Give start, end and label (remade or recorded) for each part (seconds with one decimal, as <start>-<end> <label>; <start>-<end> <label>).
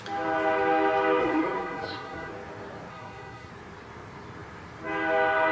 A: 0.0-1.2 recorded; 1.2-2.3 remade; 2.3-2.9 recorded; 2.9-3.5 remade; 3.5-5.5 recorded